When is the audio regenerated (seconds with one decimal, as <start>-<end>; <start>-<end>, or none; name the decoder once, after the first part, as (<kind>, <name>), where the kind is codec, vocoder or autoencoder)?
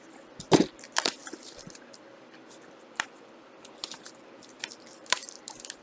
0.0-5.8 (vocoder, BigVGAN v2)